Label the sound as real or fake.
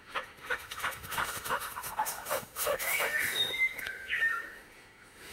fake